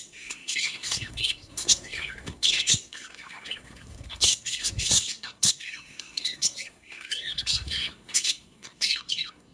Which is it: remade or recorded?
remade